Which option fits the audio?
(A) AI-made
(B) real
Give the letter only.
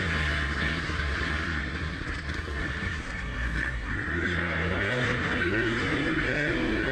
A